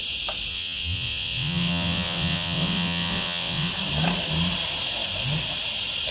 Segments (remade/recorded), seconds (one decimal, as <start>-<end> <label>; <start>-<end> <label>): 0.0-0.5 recorded; 0.5-3.7 remade; 3.7-6.1 recorded

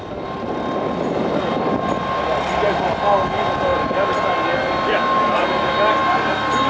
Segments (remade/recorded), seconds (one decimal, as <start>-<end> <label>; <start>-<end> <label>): 0.0-6.7 recorded